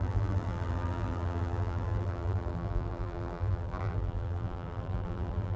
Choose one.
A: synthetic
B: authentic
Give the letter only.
A